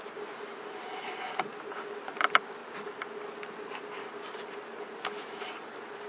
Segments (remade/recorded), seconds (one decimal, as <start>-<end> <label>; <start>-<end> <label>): 0.0-6.1 recorded